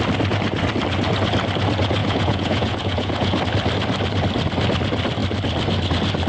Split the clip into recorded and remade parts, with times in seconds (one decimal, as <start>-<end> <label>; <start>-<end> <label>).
0.0-2.0 recorded; 2.0-3.4 remade; 3.4-6.3 recorded